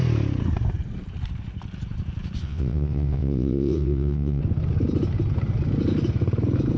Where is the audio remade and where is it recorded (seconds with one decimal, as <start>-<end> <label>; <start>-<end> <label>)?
0.0-2.4 recorded; 2.4-4.4 remade; 4.4-6.8 recorded

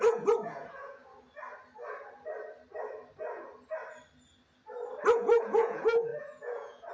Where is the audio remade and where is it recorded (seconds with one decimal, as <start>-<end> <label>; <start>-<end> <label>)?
0.0-1.0 remade; 1.0-5.1 recorded; 5.1-6.9 remade

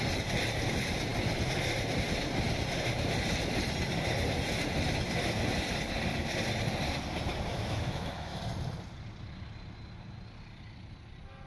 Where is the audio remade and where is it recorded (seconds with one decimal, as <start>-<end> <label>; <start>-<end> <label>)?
0.0-7.5 recorded; 7.5-8.4 remade; 8.4-11.5 recorded

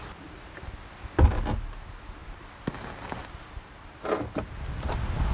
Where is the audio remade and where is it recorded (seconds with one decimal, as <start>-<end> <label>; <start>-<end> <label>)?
0.0-5.3 recorded